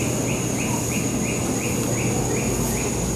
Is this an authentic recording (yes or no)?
yes